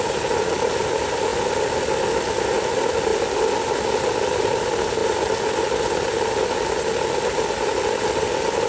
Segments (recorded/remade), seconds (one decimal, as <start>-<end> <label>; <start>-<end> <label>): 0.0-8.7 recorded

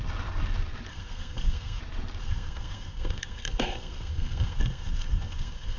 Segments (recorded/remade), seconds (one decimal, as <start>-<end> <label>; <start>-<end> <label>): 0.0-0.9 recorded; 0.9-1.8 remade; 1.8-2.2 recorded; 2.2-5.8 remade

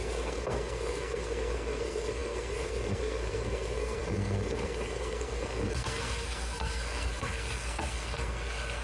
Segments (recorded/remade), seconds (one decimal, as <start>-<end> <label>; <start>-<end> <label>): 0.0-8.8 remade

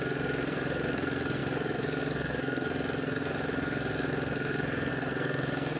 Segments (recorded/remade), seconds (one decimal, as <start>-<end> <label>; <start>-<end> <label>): 0.0-5.8 remade

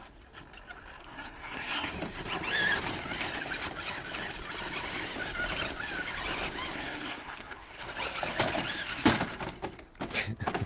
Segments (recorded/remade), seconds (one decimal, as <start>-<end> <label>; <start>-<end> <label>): 0.0-1.0 recorded; 1.0-1.9 remade; 1.9-6.7 recorded; 6.7-7.8 remade; 7.8-10.7 recorded

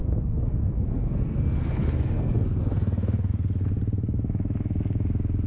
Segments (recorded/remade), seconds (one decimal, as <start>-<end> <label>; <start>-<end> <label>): 0.0-3.3 remade; 3.3-5.5 recorded